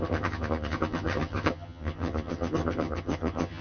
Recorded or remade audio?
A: remade